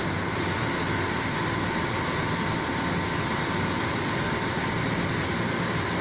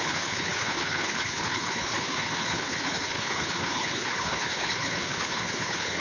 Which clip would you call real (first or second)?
first